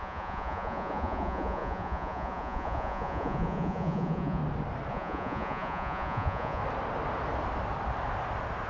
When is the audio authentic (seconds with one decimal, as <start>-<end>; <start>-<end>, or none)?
4.4-4.9; 6.6-8.7